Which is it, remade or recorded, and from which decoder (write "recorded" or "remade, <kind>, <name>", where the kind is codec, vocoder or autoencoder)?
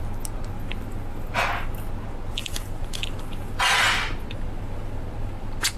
recorded